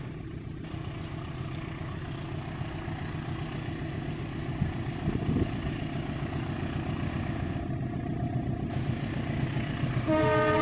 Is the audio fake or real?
real